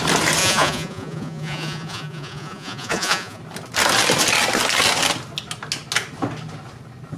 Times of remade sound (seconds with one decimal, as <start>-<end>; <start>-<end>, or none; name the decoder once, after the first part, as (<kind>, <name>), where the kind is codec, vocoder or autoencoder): 0.4-3.4 (vocoder, Vocos)